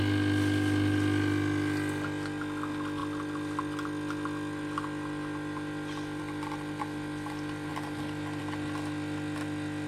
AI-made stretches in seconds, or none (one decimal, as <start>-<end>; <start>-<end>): none